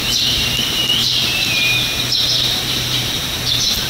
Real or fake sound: fake